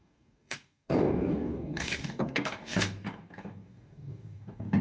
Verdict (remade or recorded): remade